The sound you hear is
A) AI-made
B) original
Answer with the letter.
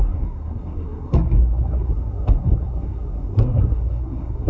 A